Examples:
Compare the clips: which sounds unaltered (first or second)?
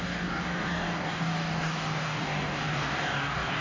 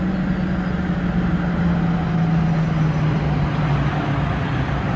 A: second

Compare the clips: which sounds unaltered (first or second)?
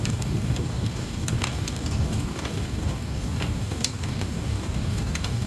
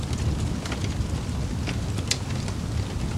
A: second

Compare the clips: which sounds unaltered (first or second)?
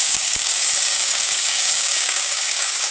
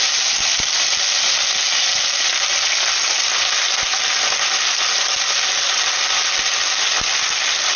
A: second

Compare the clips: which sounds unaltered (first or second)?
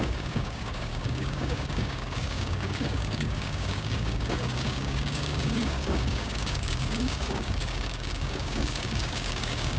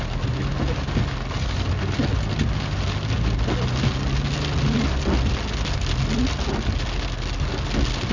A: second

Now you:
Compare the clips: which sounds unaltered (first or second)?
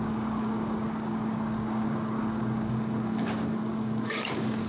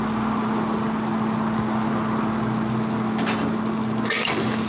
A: second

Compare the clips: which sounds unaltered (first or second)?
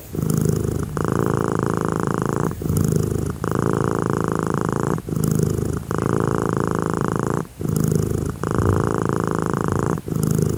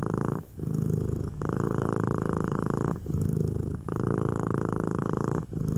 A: first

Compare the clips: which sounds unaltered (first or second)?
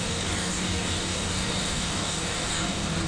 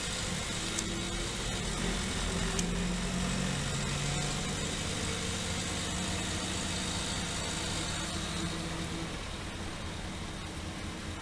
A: second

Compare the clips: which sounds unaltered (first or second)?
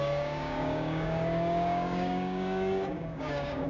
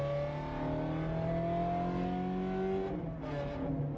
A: second